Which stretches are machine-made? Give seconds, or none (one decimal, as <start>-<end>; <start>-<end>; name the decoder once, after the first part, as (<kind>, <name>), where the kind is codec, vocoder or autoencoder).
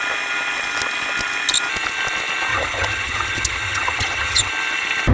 2.5-4.5 (vocoder, HiFi-GAN)